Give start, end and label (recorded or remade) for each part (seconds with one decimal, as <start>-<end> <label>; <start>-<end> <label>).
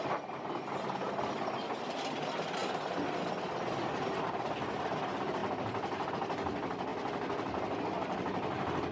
0.0-8.9 recorded